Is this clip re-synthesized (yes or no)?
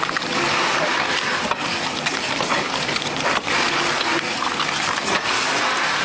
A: no